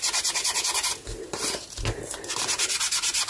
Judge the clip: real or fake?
real